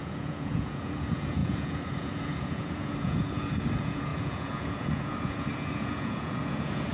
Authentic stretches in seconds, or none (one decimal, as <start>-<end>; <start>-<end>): none